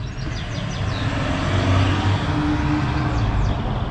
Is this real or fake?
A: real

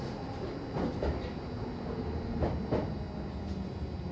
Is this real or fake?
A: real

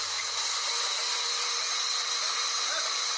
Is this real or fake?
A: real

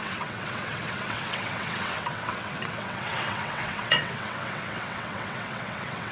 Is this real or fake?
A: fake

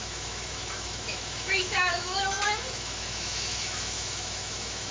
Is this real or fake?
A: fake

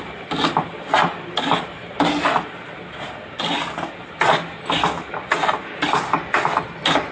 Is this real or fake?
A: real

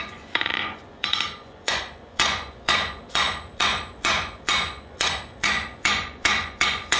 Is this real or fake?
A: fake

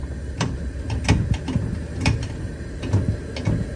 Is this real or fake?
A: real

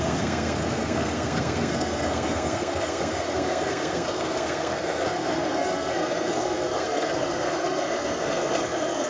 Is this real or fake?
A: fake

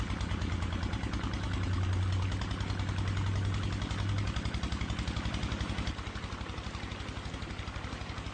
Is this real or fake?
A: real